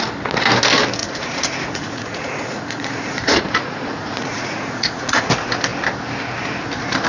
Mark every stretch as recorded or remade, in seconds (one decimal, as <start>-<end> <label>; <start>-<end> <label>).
0.0-1.0 recorded; 1.0-5.3 remade; 5.3-7.1 recorded